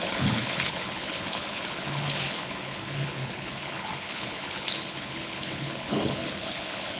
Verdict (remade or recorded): remade